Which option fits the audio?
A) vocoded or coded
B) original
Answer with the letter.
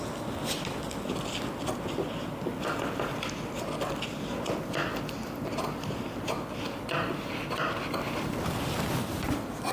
B